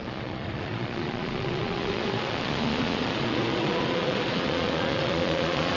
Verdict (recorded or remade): remade